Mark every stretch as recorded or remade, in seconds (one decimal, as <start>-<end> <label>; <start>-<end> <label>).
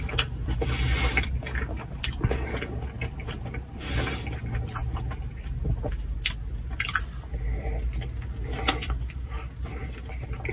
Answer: 0.0-10.5 recorded